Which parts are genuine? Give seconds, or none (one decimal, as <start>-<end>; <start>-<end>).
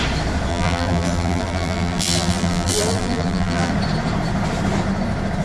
0.0-0.5; 3.7-5.4